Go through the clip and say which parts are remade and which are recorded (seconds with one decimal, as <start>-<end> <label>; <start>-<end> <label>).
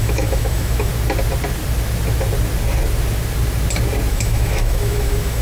0.0-0.9 remade; 0.9-4.1 recorded; 4.1-5.4 remade